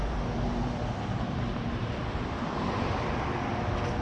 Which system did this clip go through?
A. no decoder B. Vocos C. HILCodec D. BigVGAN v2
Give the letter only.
D